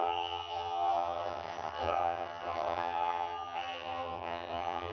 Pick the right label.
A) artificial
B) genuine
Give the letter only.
A